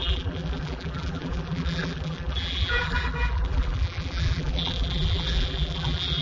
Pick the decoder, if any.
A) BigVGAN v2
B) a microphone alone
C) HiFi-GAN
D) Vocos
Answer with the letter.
A